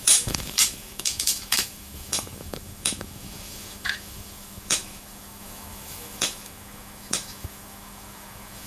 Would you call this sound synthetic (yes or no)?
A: yes